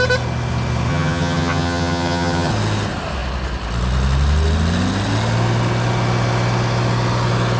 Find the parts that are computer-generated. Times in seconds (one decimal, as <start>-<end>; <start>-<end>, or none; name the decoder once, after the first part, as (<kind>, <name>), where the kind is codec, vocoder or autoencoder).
0.9-2.5 (vocoder, HiFi-GAN)